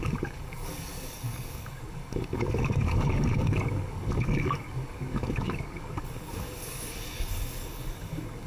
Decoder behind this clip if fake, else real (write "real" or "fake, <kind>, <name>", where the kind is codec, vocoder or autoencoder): fake, codec, DAC